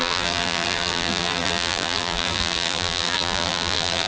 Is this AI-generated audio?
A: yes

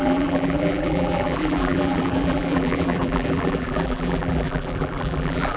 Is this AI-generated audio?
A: yes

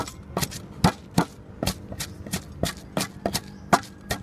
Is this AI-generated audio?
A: no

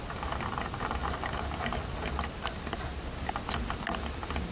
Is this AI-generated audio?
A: no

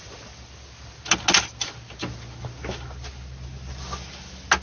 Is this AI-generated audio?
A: no